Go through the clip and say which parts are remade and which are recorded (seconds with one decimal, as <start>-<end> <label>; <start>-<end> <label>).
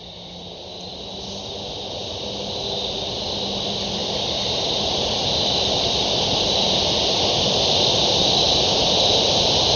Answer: 0.0-4.0 recorded; 4.0-5.2 remade; 5.2-9.8 recorded